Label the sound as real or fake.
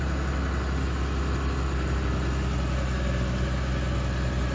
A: real